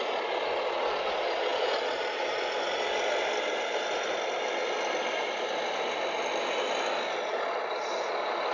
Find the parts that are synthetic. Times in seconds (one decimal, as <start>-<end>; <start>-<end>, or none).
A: none